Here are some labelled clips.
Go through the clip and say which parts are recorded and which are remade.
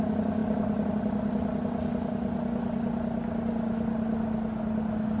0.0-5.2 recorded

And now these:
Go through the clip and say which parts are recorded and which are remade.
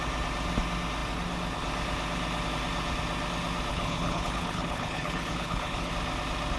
0.0-3.7 recorded; 3.7-5.9 remade; 5.9-6.6 recorded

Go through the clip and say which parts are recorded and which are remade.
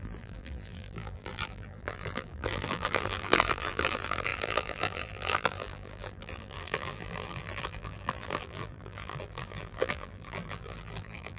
0.0-11.4 remade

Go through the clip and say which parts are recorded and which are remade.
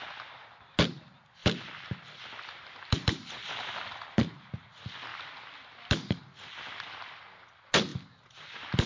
0.0-1.4 recorded; 1.4-4.4 remade; 4.4-5.1 recorded; 5.1-6.3 remade; 6.3-8.9 recorded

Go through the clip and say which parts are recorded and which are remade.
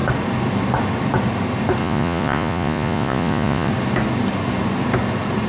0.0-1.8 recorded; 1.8-3.7 remade; 3.7-5.5 recorded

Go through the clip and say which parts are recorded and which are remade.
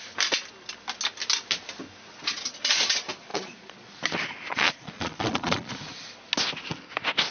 0.0-3.3 recorded; 3.3-3.9 remade; 3.9-4.5 recorded; 4.5-5.7 remade; 5.7-7.3 recorded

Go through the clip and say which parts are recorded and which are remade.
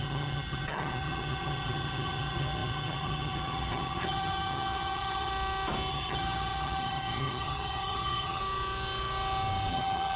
0.0-5.3 remade; 5.3-5.9 recorded; 5.9-8.4 remade; 8.4-9.7 recorded; 9.7-10.2 remade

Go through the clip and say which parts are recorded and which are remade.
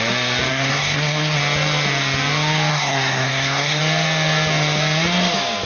0.0-0.5 recorded; 0.5-1.4 remade; 1.4-2.7 recorded; 2.7-3.8 remade; 3.8-5.7 recorded